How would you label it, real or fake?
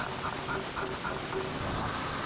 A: real